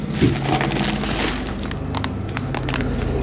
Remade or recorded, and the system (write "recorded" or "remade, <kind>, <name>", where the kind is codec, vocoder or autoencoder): recorded